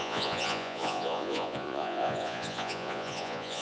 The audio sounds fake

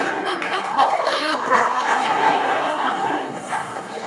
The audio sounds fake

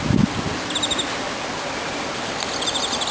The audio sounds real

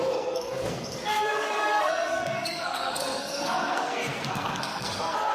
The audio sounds fake